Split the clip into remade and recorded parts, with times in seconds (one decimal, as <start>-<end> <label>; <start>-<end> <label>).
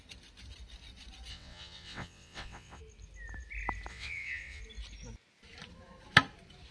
0.0-1.3 recorded; 1.3-2.8 remade; 2.8-3.9 recorded; 3.9-4.6 remade; 4.6-6.7 recorded